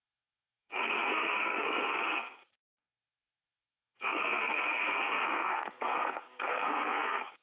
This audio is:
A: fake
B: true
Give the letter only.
A